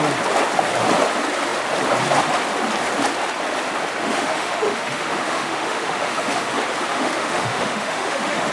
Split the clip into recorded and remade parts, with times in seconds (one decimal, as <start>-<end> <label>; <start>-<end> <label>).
0.0-4.0 recorded; 4.0-6.5 remade; 6.5-6.9 recorded; 6.9-8.5 remade